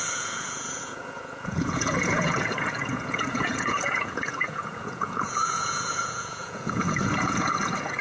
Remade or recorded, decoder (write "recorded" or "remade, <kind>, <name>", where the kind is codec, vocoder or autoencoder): remade, vocoder, Vocos